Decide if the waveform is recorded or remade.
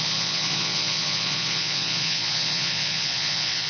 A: remade